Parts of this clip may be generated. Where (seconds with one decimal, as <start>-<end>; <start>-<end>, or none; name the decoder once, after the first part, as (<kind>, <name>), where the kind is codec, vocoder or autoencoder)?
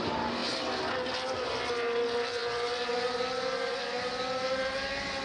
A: none